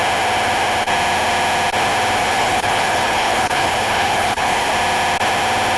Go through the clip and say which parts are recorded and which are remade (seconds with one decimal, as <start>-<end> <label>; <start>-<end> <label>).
0.0-2.2 recorded; 2.2-4.7 remade; 4.7-5.8 recorded